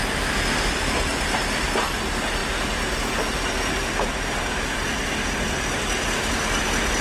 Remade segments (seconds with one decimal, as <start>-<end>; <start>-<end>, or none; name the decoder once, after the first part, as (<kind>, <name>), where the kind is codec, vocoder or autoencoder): none